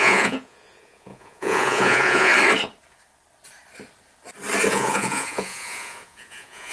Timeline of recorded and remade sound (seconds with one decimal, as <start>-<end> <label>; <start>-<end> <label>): 0.0-2.3 remade; 2.3-4.7 recorded; 4.7-6.7 remade